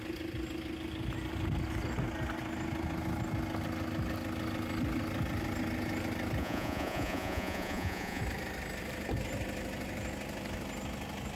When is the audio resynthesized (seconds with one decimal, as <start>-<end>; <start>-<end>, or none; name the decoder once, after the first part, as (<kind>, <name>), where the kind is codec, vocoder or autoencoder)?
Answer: 6.4-8.2 (vocoder, Vocos)